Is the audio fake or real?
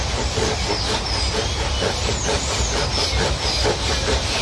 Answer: real